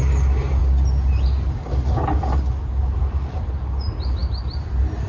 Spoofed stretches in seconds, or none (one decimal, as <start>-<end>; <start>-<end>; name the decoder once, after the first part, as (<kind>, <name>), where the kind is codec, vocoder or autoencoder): none